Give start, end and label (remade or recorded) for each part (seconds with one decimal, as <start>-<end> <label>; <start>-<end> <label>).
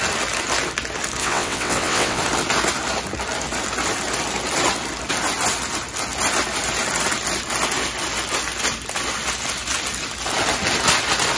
0.0-1.2 recorded; 1.2-2.2 remade; 2.2-11.4 recorded